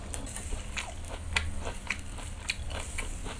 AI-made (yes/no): no